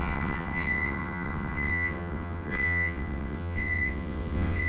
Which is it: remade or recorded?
remade